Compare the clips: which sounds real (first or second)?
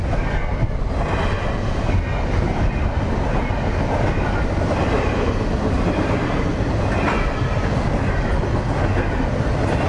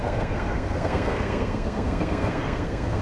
first